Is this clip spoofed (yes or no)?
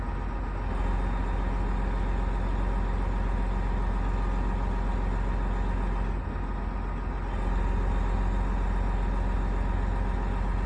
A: no